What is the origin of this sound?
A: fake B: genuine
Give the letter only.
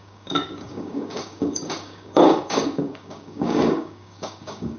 A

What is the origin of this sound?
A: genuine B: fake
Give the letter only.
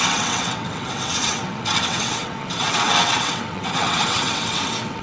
B